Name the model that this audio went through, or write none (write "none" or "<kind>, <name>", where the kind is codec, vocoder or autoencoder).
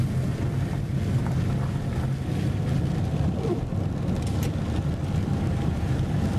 none